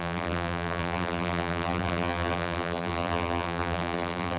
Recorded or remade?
remade